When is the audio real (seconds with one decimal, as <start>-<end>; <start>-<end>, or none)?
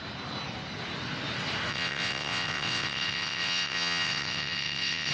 0.0-1.7